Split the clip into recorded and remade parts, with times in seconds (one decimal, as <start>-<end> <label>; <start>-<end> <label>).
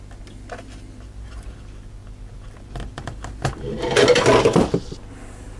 0.0-5.6 recorded